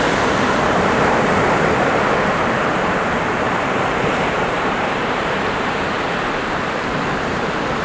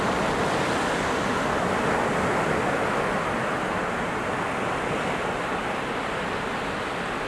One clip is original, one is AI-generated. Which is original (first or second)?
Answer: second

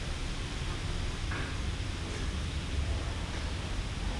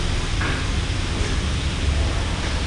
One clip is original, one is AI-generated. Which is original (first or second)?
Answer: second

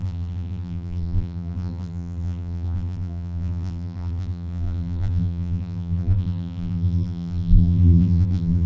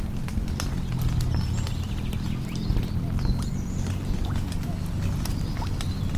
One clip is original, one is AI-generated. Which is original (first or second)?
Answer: second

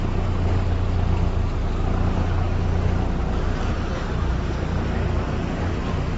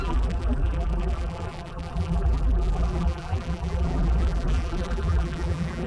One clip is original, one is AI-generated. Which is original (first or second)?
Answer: first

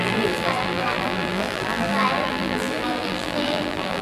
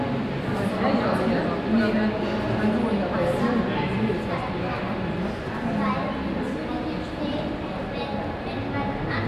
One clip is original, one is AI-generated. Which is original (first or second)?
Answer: second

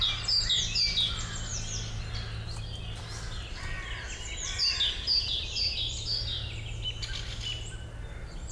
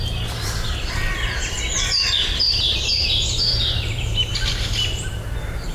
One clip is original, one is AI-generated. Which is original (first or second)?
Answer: first